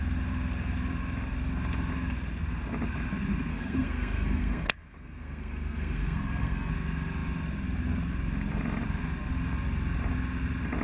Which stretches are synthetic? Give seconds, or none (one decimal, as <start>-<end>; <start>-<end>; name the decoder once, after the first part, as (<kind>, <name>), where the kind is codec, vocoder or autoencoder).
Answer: 3.5-6.7 (codec, SNAC)